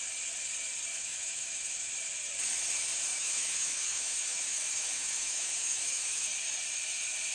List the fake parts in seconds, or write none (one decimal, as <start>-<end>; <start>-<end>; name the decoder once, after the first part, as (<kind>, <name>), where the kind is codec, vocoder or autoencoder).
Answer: 0.9-1.9 (autoencoder, DAC-VAE); 3.1-6.3